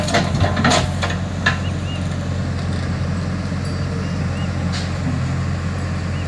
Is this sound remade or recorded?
recorded